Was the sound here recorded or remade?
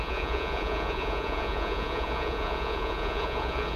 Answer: remade